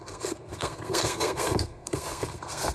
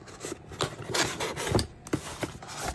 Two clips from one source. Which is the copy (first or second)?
first